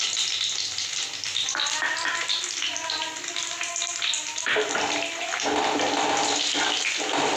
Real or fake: real